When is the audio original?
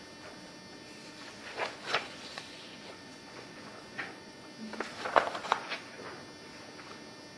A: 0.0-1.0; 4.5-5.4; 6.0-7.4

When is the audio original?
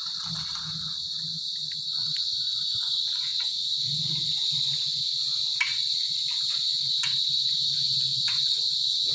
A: 0.0-3.3; 4.1-8.1; 8.7-9.1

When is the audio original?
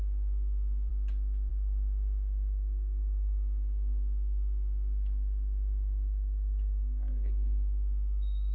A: 0.9-1.5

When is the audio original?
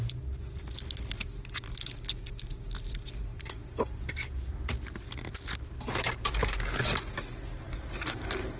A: 0.0-8.6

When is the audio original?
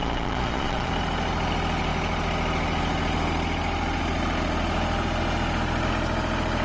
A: 0.9-6.6